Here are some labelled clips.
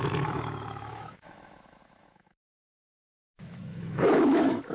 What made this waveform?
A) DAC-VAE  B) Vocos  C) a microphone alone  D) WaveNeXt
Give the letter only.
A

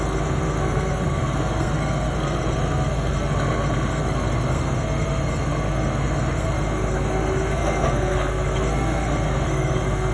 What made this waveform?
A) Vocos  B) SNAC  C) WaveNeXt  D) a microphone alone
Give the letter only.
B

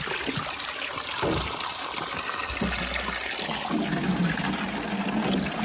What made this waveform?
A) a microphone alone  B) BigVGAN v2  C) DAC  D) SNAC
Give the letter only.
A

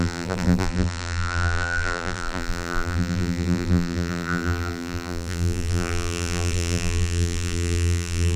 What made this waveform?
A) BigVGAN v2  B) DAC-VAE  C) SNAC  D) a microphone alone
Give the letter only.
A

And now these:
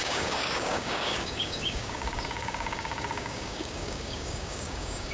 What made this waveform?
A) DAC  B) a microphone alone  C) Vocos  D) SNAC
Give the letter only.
A